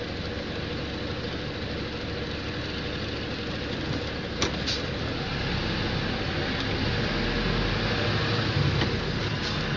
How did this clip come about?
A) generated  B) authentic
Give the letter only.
B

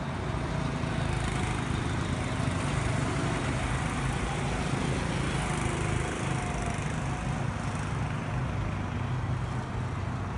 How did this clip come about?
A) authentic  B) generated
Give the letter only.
A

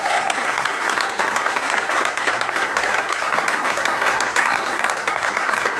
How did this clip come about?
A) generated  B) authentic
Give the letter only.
A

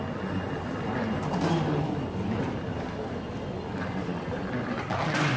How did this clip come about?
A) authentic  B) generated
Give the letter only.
A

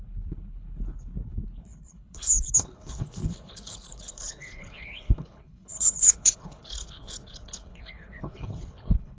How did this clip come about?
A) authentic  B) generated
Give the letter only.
B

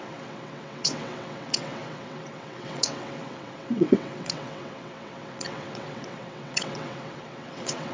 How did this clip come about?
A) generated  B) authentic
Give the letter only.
A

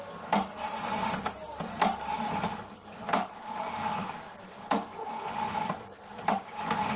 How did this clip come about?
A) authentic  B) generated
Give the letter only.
A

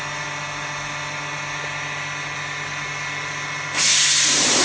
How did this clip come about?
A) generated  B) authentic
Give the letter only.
B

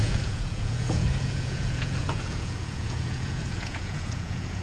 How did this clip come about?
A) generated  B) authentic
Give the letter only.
A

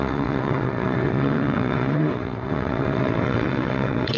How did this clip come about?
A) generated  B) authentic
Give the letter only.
A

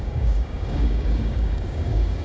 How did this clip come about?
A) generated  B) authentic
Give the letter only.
A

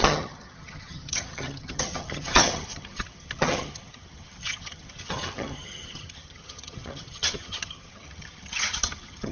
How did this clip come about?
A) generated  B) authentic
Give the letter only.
A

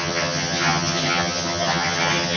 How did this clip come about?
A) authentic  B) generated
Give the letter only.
B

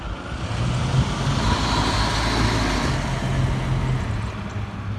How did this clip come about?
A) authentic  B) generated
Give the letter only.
A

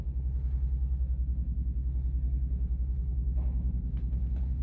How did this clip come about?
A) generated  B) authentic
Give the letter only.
B